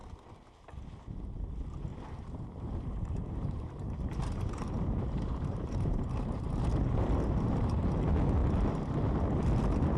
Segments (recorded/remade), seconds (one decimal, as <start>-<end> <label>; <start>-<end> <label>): 0.0-1.9 recorded; 1.9-6.6 remade; 6.6-10.0 recorded